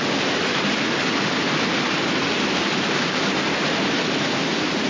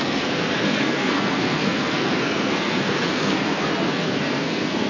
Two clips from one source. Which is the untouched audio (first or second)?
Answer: first